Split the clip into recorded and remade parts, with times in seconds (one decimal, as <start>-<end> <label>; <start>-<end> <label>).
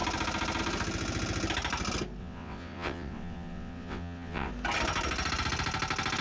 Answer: 0.0-2.2 recorded; 2.2-4.5 remade; 4.5-6.2 recorded